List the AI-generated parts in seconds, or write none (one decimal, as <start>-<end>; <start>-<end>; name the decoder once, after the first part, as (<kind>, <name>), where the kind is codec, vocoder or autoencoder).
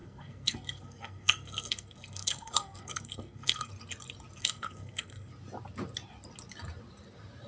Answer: 0.0-3.7 (codec, SNAC); 4.4-5.3